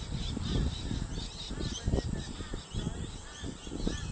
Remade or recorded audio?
recorded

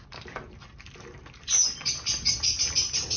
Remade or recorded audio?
recorded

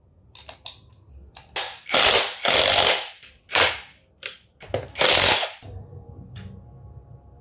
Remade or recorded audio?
recorded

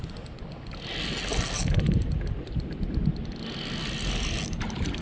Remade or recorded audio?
recorded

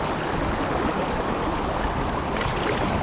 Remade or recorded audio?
recorded